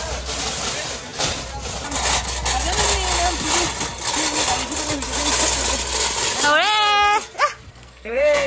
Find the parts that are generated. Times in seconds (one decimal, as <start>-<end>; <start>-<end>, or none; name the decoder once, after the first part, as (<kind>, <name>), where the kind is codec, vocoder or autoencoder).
7.7-8.5 (codec, SNAC)